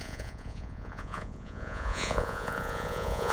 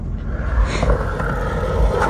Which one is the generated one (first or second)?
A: first